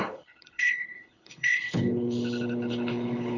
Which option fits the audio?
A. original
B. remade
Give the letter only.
B